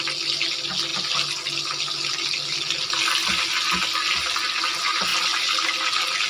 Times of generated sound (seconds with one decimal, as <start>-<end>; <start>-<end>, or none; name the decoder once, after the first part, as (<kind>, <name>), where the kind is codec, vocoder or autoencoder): none